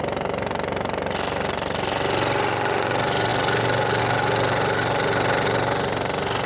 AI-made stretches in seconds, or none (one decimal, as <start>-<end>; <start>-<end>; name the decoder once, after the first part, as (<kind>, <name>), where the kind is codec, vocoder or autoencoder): none